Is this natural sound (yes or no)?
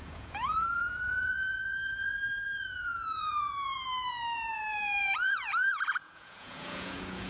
no